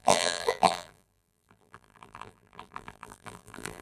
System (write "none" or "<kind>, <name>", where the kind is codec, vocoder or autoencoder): vocoder, BigVGAN v2